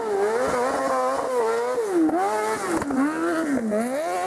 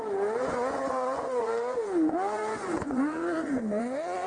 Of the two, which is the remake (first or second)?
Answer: second